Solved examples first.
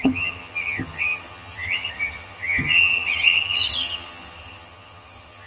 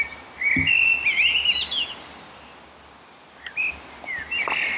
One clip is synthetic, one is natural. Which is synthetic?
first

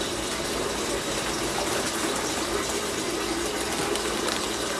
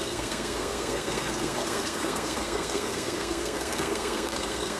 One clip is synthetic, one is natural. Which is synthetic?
second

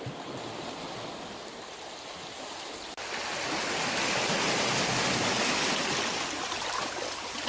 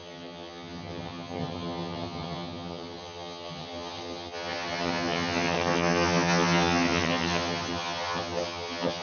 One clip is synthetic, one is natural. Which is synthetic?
second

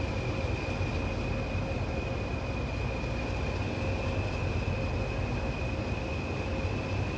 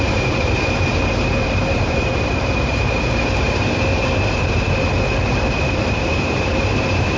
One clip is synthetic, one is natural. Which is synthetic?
second